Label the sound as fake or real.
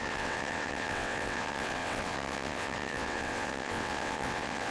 fake